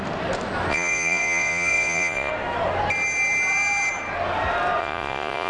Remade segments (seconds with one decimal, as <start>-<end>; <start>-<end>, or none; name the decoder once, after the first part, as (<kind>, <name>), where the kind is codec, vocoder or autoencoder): 0.7-2.3 (vocoder, Vocos); 4.8-5.5